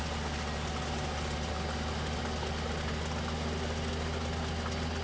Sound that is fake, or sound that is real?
real